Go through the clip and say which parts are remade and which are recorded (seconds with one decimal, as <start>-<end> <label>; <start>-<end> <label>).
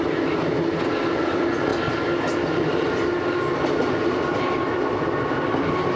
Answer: 0.0-6.0 recorded